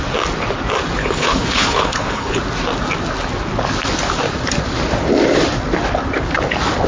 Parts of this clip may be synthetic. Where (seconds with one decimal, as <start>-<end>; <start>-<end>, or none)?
1.0-2.3